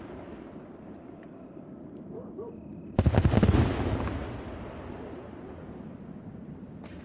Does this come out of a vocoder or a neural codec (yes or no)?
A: no